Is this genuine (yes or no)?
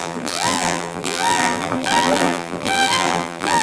no